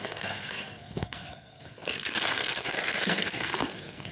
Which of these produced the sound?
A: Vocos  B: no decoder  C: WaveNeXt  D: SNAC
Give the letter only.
D